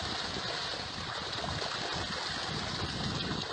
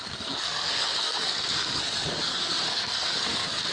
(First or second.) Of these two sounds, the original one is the first